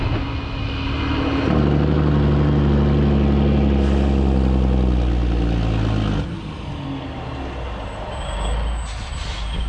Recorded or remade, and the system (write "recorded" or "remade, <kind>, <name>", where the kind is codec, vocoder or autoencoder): recorded